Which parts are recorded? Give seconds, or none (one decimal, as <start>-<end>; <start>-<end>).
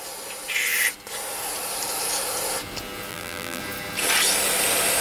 0.0-3.1; 3.6-5.0